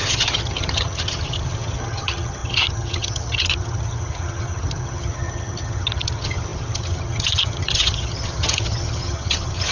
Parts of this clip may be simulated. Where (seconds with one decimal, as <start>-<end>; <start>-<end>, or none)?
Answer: 0.0-9.7